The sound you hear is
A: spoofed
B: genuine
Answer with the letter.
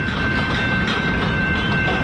B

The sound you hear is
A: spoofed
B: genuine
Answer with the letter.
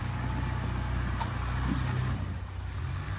B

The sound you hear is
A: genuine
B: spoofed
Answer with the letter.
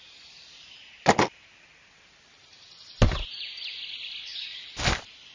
A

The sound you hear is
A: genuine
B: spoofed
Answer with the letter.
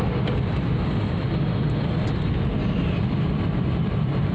A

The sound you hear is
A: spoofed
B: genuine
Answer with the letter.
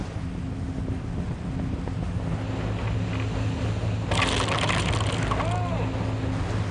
B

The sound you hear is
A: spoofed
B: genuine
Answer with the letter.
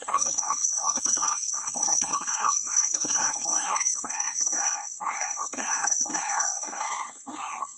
A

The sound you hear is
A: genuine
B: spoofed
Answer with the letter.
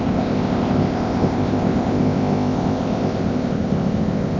B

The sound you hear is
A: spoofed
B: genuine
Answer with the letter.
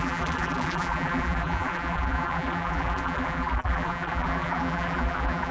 A